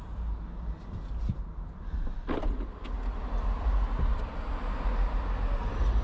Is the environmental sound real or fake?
real